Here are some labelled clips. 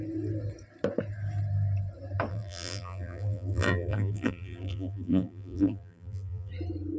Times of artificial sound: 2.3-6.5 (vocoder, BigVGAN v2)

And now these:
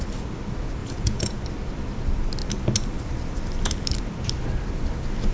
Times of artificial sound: 0.8-1.4 (vocoder, Vocos)

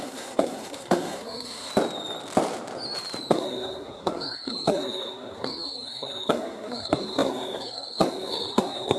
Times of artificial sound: 0.0-1.7 (codec, SNAC); 3.3-9.0

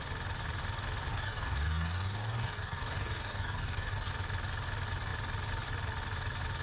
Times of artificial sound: 1.1-4.1 (codec, DAC)